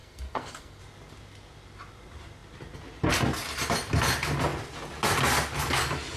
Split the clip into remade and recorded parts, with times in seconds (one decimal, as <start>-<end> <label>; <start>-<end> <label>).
0.0-0.8 remade; 0.8-6.2 recorded

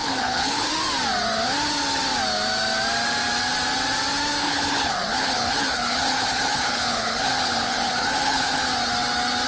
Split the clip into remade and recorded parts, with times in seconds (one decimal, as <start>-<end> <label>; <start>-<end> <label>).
0.0-0.7 remade; 0.7-4.4 recorded; 4.4-8.6 remade; 8.6-9.5 recorded

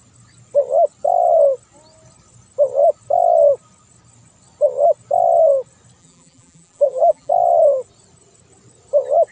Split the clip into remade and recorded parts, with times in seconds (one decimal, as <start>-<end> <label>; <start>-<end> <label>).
0.0-6.0 recorded; 6.0-7.3 remade; 7.3-9.3 recorded

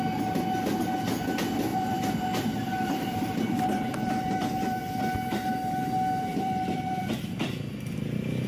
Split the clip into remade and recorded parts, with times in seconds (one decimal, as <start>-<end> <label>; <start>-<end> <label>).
0.0-1.7 recorded; 1.7-4.8 remade; 4.8-6.3 recorded; 6.3-7.1 remade; 7.1-8.5 recorded

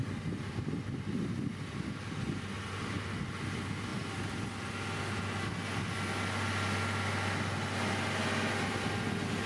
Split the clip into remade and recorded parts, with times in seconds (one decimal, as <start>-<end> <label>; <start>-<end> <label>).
0.0-9.5 recorded